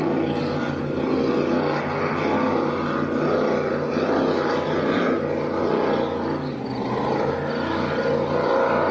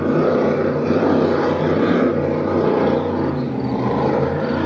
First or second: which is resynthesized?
second